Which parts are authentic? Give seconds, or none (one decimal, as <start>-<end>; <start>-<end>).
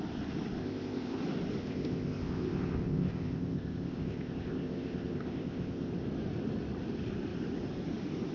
0.0-0.6; 1.2-1.6; 5.9-8.3